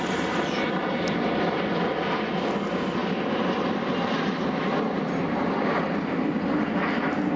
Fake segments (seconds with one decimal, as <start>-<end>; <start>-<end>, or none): none